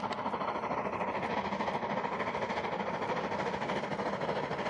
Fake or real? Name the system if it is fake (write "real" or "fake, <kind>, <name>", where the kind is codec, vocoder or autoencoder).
real